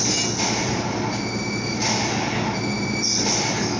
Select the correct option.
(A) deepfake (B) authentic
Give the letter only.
B